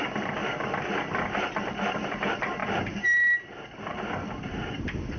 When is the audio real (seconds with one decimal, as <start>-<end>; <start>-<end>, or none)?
0.0-5.2